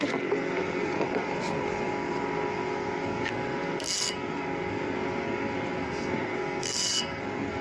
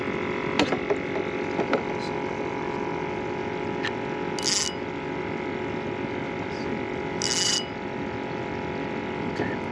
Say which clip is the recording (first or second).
second